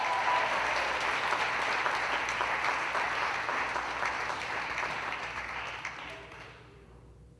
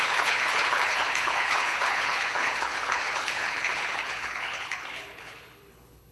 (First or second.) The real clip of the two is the first